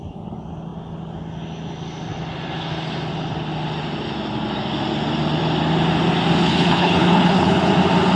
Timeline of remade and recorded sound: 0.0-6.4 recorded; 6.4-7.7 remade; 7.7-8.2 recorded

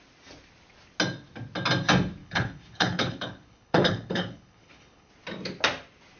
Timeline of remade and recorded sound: 0.0-2.2 recorded; 2.2-5.1 remade; 5.1-6.2 recorded

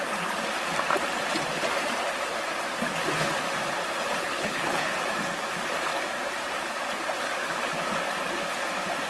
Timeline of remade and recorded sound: 0.0-4.2 recorded; 4.2-4.9 remade; 4.9-9.1 recorded

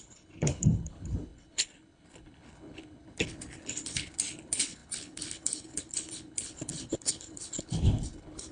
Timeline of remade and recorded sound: 0.0-8.5 remade

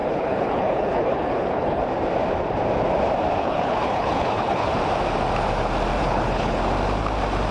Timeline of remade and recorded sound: 0.0-1.8 remade; 1.8-3.4 recorded; 3.4-4.8 remade; 4.8-6.0 recorded; 6.0-6.6 remade; 6.6-7.5 recorded

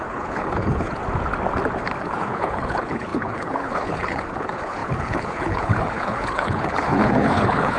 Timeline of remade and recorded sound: 0.0-1.0 remade; 1.0-2.0 recorded; 2.0-7.8 remade

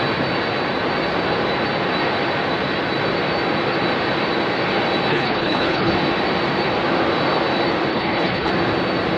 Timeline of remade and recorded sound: 0.0-5.1 recorded; 5.1-5.9 remade; 5.9-7.9 recorded; 7.9-8.5 remade; 8.5-9.2 recorded

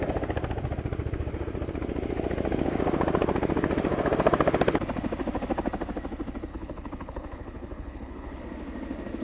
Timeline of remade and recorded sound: 0.0-6.5 recorded; 6.5-8.4 remade; 8.4-9.2 recorded